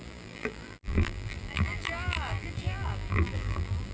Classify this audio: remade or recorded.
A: remade